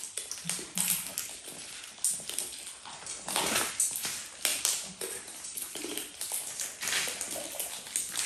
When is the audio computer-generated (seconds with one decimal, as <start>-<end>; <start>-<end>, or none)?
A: 4.5-6.2